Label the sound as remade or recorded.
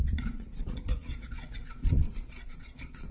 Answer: remade